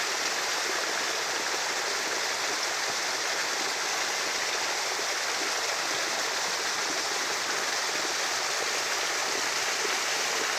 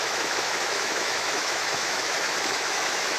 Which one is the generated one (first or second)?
second